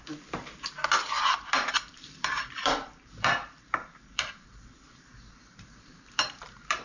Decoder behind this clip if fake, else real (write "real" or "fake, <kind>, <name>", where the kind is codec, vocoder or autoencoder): fake, vocoder, BigVGAN v2